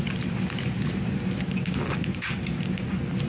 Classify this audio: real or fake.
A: real